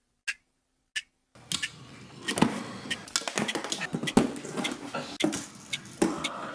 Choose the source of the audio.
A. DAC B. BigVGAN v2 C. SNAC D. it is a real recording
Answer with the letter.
D